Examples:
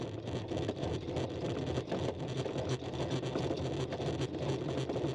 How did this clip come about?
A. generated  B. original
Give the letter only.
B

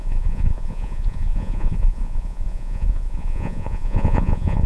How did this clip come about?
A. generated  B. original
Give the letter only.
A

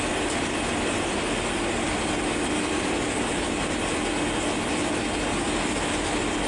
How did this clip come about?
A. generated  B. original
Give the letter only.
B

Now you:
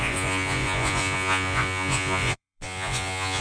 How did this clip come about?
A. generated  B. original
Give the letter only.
A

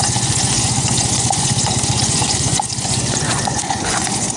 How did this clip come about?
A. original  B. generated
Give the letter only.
B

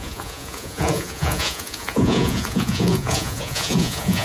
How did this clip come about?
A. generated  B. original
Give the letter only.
A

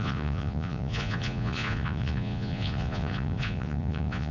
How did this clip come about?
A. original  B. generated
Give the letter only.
B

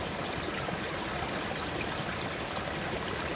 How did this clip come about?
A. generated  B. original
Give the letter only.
B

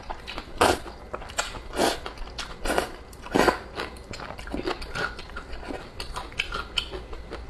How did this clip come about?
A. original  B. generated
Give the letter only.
A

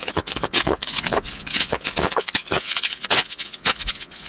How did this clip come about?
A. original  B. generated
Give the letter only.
B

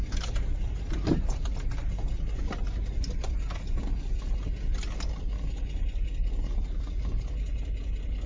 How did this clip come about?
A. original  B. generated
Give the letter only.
A